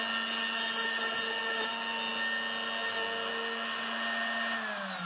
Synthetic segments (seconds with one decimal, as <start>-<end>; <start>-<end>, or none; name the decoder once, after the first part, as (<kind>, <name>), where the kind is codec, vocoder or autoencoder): none